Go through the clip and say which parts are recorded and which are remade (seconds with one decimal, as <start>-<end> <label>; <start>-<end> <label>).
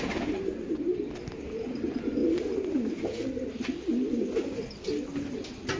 0.0-5.8 recorded